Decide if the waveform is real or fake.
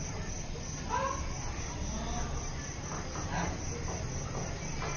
real